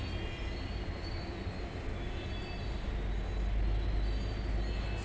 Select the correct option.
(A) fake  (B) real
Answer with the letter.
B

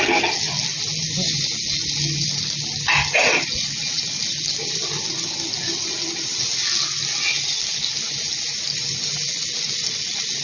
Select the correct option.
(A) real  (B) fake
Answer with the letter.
A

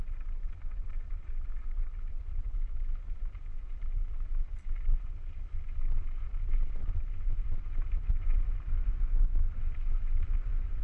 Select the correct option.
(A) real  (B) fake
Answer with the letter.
B